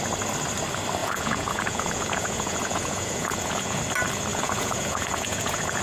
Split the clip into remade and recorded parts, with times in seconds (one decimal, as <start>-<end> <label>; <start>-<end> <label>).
0.0-1.0 recorded; 1.0-3.8 remade; 3.8-4.3 recorded; 4.3-5.8 remade